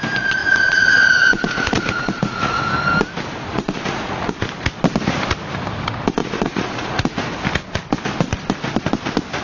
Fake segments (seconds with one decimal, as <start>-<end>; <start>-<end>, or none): 0.4-2.6; 3.5-4.3; 6.2-7.2